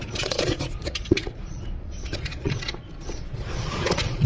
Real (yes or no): no